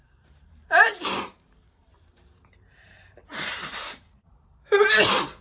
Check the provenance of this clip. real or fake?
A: fake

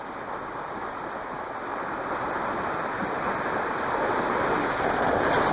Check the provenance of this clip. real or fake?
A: real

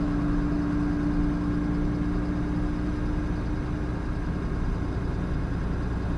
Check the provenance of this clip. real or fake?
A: real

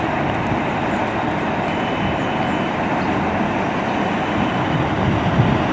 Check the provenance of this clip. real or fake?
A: real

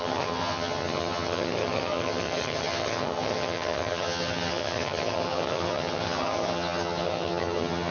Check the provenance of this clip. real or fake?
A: fake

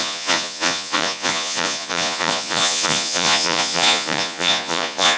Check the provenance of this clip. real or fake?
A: fake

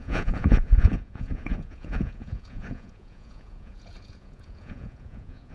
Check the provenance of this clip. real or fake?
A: fake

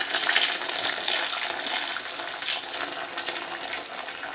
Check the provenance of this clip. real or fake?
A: real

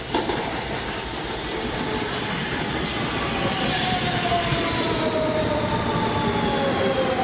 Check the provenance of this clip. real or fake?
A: real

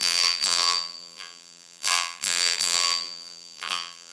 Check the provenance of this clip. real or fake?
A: fake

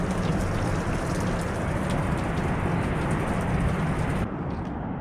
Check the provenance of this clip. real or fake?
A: real